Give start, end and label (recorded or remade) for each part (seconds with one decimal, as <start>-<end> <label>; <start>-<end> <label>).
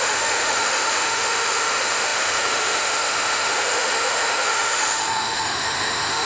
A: 0.0-6.3 remade